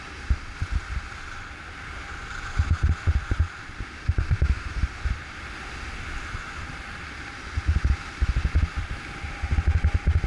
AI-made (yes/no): no